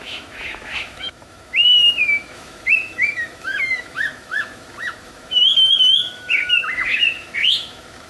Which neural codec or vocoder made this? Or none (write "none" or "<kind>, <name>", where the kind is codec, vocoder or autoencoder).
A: autoencoder, DAC-VAE